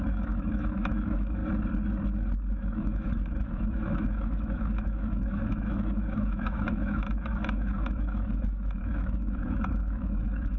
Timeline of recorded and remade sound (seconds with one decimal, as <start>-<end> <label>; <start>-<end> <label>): 0.0-1.4 remade; 1.4-2.5 recorded; 2.5-10.6 remade